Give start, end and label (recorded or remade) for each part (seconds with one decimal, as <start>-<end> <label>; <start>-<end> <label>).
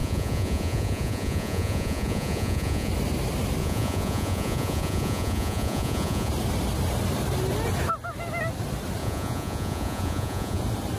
0.0-2.9 remade; 2.9-3.6 recorded; 3.6-6.3 remade; 6.3-9.0 recorded; 9.0-10.6 remade; 10.6-11.0 recorded